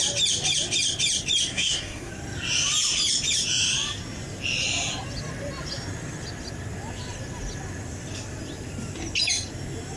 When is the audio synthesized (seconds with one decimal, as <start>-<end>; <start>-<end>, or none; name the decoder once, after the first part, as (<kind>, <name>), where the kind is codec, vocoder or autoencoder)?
1.5-2.1 (codec, SNAC)

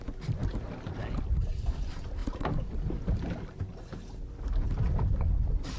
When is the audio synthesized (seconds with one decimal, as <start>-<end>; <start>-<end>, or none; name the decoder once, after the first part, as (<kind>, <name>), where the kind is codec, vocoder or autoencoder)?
none

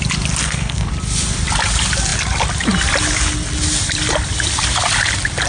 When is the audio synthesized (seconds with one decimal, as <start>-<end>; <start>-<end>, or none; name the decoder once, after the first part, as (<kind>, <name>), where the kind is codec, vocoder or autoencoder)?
0.4-0.9 (codec, SNAC)

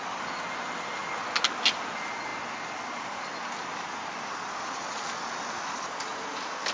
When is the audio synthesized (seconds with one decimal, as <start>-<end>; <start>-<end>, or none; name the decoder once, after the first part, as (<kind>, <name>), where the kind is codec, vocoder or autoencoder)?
none

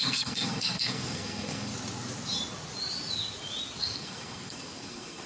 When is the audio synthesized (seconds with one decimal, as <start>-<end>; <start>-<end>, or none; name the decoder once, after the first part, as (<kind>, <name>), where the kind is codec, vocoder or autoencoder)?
0.0-1.7 (codec, SNAC); 3.8-5.3

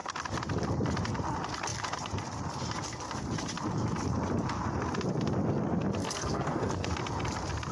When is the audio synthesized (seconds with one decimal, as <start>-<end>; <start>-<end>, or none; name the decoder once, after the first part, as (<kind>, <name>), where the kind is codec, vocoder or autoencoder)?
6.0-6.9 (codec, SNAC)